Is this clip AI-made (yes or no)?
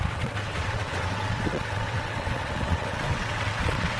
yes